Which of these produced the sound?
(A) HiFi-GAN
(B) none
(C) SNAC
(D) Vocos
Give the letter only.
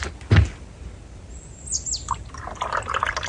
B